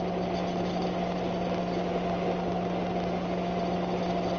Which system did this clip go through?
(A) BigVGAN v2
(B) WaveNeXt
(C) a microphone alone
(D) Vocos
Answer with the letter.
C